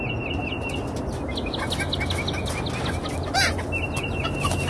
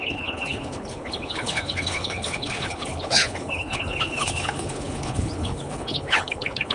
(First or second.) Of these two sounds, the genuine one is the first